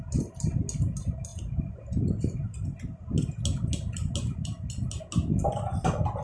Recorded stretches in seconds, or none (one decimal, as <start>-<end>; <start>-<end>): 0.0-6.2